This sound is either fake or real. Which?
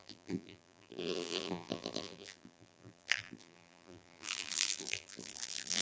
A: fake